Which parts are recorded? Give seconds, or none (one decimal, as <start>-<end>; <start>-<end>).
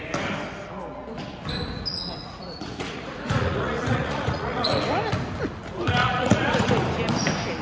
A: 0.0-1.9; 4.8-6.0; 6.7-7.6